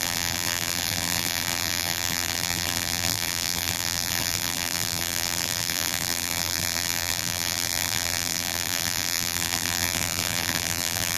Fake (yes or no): yes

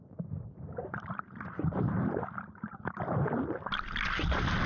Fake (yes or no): no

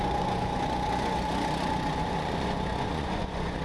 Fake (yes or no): yes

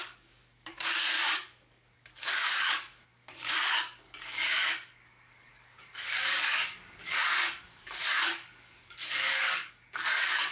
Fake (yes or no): yes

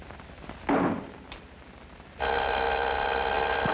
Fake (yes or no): no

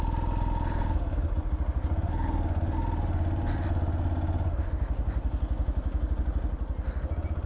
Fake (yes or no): no